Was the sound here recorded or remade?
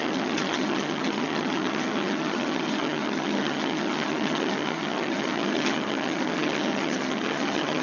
remade